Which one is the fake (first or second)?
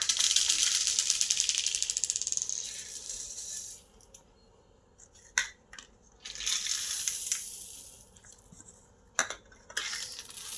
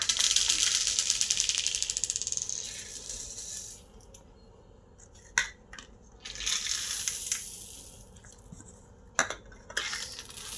first